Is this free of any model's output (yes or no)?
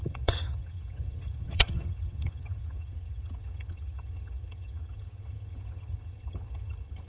no